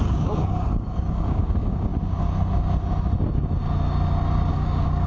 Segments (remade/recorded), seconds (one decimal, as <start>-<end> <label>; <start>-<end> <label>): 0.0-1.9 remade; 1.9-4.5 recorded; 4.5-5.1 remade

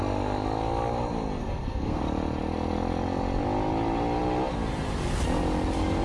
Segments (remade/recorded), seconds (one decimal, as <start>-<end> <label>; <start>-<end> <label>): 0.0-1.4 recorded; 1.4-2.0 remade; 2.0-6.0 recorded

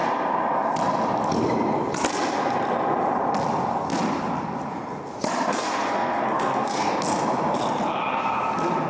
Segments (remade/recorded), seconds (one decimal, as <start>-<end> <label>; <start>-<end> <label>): 0.0-5.5 recorded; 5.5-6.9 remade; 6.9-8.9 recorded